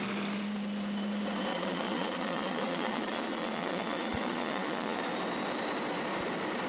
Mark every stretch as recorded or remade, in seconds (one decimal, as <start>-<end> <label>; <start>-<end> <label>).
0.0-1.5 recorded; 1.5-5.0 remade; 5.0-6.7 recorded